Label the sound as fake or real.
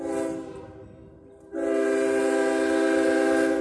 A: real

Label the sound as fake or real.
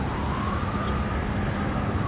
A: real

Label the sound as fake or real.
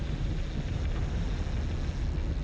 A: real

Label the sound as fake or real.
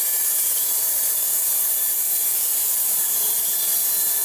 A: real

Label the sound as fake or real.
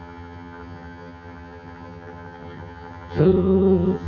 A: fake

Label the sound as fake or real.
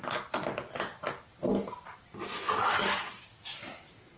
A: real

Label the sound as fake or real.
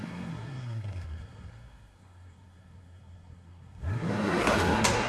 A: fake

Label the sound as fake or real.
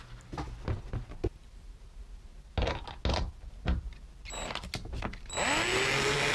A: real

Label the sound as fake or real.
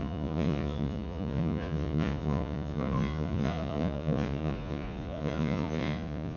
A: fake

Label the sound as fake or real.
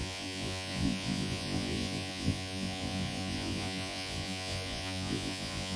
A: fake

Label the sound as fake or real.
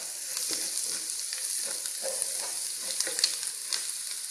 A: real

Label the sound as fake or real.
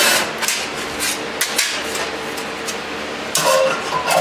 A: real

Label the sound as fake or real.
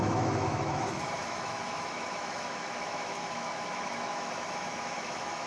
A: fake